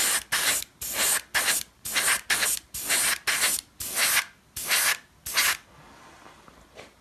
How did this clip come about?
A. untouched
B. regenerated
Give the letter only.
A